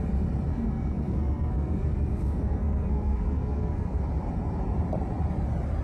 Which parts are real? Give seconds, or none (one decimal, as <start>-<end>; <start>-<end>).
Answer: 0.0-0.5; 4.0-5.8